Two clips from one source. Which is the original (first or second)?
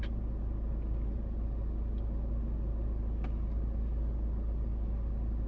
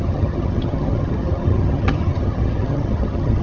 first